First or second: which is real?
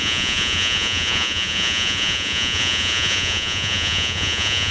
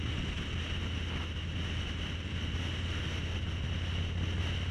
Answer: second